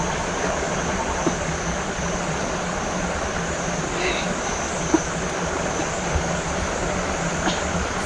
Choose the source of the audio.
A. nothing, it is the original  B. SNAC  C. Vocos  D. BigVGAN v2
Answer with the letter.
A